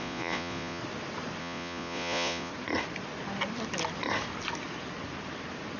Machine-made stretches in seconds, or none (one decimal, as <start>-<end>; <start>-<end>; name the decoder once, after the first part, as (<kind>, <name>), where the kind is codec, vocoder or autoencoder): 0.0-0.8 (vocoder, Vocos); 1.4-2.5